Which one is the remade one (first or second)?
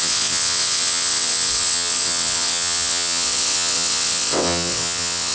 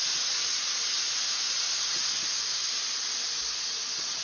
first